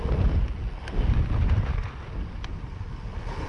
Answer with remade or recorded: recorded